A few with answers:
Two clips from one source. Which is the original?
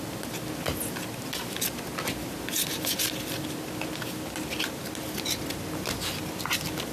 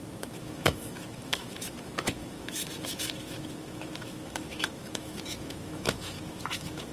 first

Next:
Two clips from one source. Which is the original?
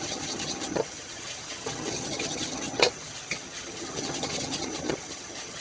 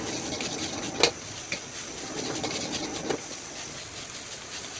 second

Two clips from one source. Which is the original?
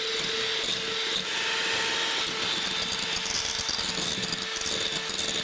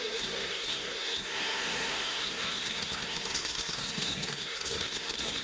first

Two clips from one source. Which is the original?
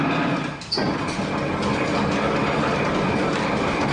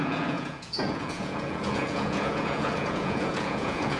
first